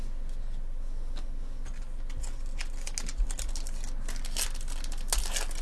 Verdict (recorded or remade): recorded